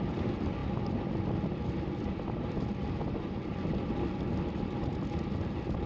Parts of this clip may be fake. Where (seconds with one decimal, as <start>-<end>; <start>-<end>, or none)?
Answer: none